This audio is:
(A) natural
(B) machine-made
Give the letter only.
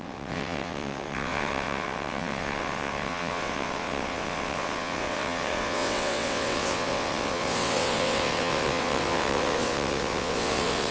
B